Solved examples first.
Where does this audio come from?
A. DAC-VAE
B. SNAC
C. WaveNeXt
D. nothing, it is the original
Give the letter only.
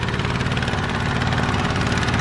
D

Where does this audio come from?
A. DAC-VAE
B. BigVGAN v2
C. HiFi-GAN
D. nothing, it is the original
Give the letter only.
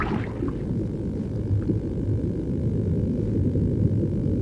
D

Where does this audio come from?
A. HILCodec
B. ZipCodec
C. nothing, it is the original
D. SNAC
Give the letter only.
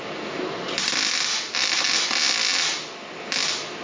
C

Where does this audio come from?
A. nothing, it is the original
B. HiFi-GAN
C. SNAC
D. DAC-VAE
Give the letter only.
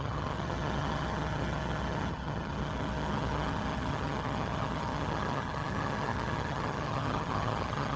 B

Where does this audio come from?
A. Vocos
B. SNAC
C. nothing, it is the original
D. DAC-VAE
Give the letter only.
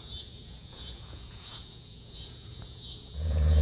A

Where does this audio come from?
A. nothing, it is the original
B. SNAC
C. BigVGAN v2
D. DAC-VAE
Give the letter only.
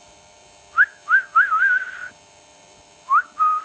C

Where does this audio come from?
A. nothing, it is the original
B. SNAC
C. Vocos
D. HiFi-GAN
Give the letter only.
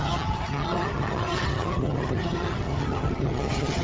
D